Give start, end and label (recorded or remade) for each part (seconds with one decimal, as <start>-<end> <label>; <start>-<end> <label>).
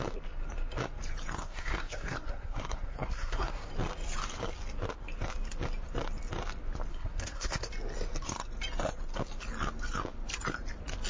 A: 0.0-1.4 recorded; 1.4-3.7 remade; 3.7-6.9 recorded; 6.9-7.7 remade; 7.7-11.1 recorded